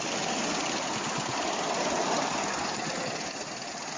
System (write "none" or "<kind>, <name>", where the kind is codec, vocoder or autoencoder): none